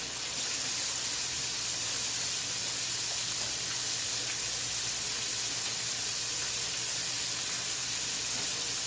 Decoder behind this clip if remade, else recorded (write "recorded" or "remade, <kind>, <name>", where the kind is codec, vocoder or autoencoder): recorded